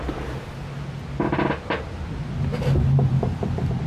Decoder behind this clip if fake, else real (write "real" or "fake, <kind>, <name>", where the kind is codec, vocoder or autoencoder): real